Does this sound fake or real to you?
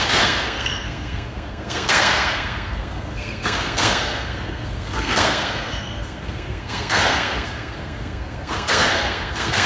fake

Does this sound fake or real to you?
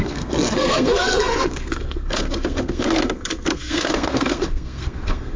fake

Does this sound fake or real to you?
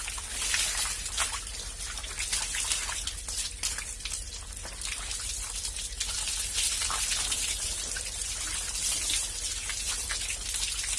real